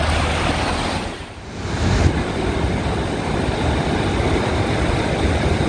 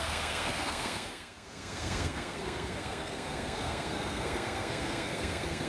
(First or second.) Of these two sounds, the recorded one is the first